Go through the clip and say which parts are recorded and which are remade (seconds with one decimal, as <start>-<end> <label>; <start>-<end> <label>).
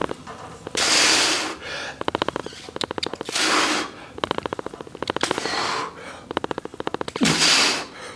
0.0-8.2 recorded